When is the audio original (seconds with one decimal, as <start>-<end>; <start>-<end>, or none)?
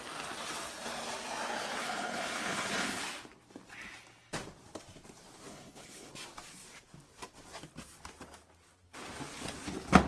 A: 0.0-1.8; 3.0-5.5; 6.1-10.1